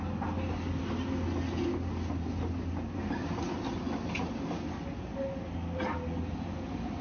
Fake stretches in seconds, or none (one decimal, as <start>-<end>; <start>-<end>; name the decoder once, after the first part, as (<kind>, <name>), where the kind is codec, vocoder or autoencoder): none